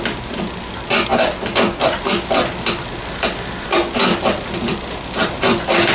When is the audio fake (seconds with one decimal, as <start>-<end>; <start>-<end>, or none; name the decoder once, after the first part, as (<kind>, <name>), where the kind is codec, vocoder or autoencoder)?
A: none